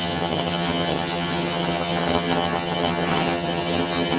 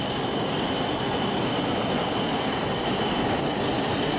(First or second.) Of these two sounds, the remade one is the first